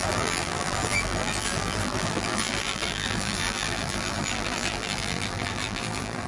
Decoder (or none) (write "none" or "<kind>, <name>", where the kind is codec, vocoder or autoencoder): vocoder, BigVGAN v2